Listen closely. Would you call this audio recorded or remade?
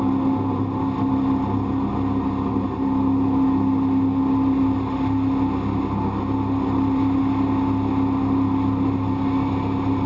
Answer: recorded